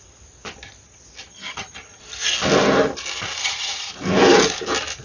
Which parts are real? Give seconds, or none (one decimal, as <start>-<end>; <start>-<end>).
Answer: 0.0-1.3; 2.0-3.4; 3.9-5.0